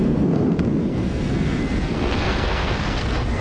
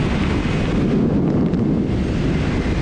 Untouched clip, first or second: second